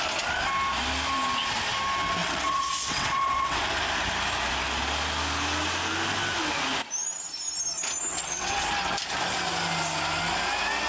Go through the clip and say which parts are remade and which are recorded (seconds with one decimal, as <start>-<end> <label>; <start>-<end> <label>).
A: 0.0-2.2 recorded; 2.2-3.6 remade; 3.6-8.1 recorded; 8.1-8.7 remade; 8.7-10.9 recorded